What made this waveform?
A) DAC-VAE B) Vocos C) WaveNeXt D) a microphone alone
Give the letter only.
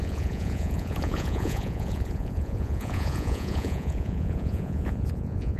B